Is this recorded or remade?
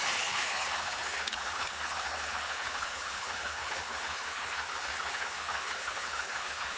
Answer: remade